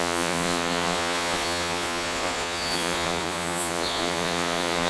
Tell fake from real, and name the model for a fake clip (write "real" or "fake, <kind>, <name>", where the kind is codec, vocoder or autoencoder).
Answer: fake, vocoder, Vocos